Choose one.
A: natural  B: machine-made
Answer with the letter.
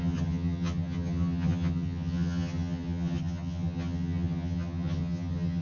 B